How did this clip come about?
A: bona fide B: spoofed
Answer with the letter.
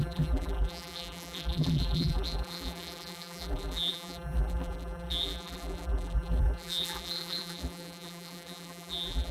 B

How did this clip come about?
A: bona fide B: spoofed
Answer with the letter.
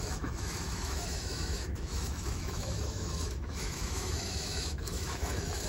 B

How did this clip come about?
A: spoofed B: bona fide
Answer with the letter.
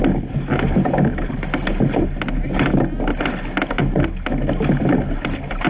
B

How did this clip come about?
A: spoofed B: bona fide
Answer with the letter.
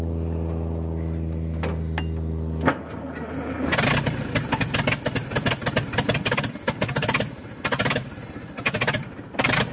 B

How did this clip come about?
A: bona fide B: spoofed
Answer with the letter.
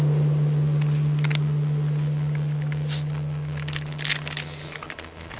A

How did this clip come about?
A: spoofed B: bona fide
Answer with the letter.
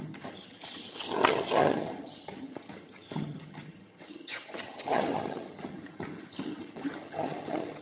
A